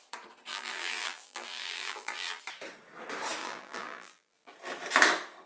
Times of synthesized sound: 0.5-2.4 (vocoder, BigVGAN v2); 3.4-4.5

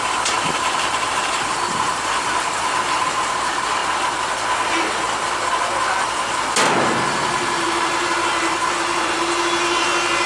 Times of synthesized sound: 0.0-3.8 (vocoder, BigVGAN v2); 7.1-10.3

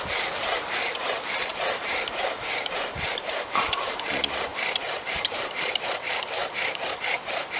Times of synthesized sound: 0.0-6.4 (vocoder, BigVGAN v2)

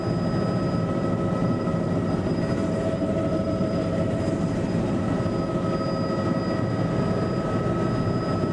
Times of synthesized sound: 1.4-5.0 (vocoder, BigVGAN v2)